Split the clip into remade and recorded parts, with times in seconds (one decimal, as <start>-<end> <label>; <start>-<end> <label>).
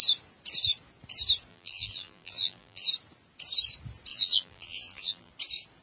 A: 0.0-1.5 recorded; 1.5-2.8 remade; 2.8-4.1 recorded; 4.1-5.3 remade; 5.3-5.8 recorded